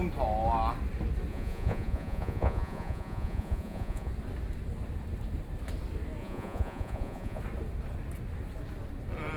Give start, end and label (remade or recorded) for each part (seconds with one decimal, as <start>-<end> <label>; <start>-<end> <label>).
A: 0.0-1.3 recorded; 1.3-4.1 remade; 4.1-6.2 recorded; 6.2-7.4 remade; 7.4-9.4 recorded